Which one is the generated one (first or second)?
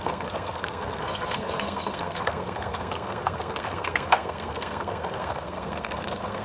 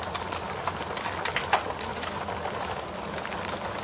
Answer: first